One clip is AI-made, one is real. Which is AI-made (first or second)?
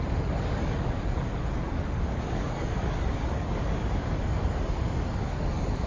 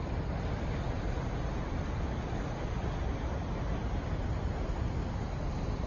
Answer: first